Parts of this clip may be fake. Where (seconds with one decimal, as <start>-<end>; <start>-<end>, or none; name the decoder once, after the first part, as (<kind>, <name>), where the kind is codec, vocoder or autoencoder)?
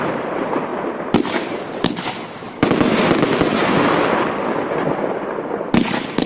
none